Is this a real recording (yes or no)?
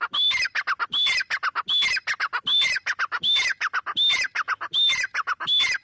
yes